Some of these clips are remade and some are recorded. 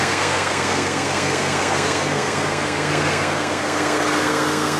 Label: remade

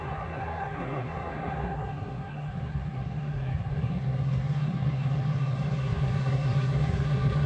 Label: remade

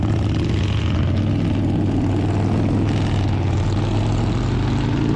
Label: recorded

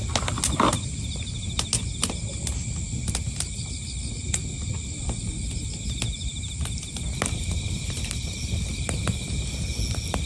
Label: recorded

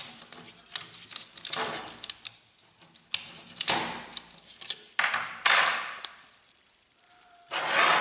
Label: recorded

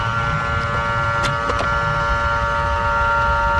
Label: recorded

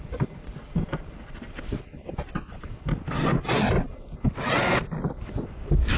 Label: recorded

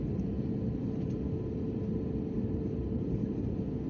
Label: recorded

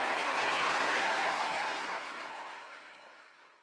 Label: remade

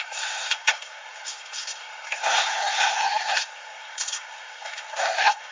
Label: remade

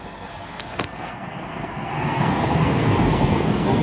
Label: remade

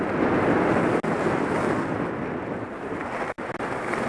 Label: recorded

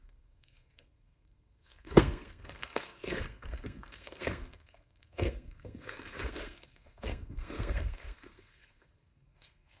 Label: remade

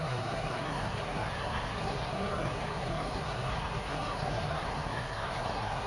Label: remade